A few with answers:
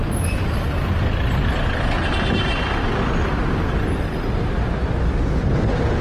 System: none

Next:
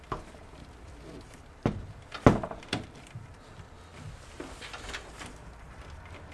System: none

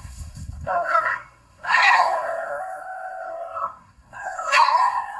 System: codec, SNAC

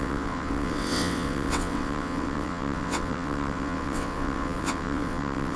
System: vocoder, WaveNeXt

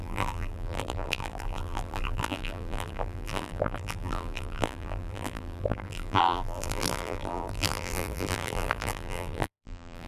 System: vocoder, BigVGAN v2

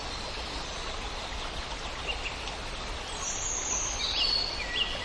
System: none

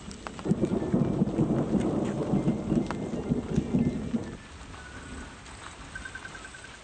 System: none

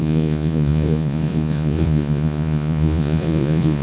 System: vocoder, Vocos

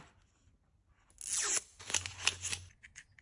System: none